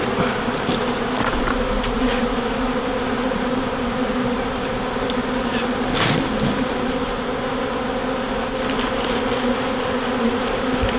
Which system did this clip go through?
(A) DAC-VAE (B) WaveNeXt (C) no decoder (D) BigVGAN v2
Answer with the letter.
C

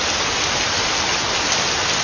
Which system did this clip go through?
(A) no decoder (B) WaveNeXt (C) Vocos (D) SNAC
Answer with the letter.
A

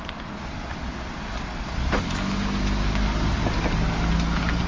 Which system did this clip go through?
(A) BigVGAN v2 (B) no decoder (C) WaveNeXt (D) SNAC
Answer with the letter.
B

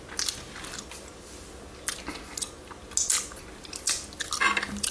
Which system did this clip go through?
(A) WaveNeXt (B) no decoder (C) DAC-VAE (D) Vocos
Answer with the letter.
B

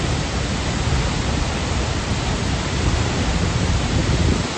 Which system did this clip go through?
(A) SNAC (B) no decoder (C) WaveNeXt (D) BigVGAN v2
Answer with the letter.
B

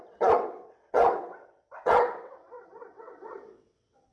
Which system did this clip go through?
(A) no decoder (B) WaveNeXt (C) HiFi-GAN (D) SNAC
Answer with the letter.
B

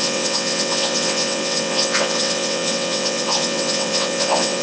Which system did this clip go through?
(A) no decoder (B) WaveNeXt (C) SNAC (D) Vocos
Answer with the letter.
B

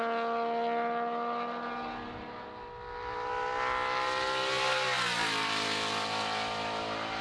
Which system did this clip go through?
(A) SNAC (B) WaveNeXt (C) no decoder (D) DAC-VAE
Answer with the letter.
C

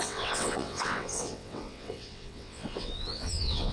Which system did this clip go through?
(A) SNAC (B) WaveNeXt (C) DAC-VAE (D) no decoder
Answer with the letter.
B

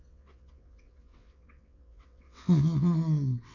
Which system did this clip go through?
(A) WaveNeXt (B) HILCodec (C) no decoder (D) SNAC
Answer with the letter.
A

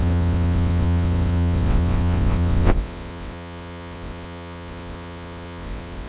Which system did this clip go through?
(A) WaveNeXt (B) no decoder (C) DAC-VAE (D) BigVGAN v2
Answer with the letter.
A